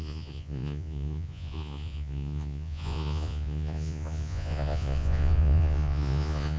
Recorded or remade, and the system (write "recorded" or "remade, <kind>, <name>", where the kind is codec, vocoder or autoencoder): remade, vocoder, Vocos